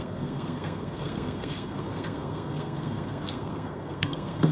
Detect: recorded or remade remade